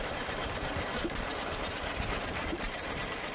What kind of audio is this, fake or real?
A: fake